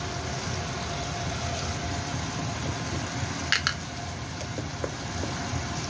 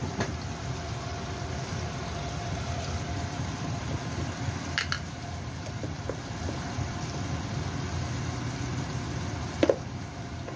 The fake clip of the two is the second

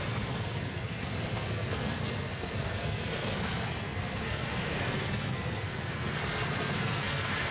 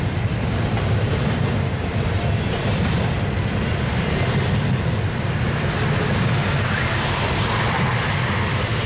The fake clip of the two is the first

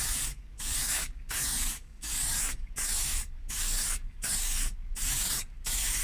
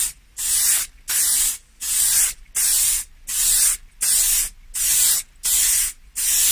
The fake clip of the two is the first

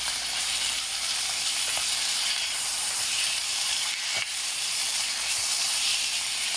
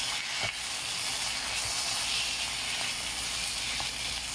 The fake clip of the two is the first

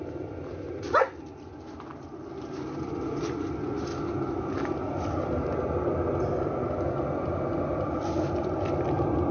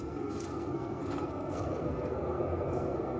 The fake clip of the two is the second